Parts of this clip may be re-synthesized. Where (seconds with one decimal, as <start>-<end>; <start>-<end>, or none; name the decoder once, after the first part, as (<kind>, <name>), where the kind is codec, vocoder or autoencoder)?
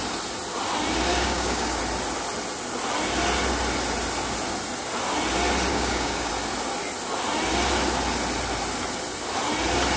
1.1-1.8 (codec, DAC); 5.7-6.3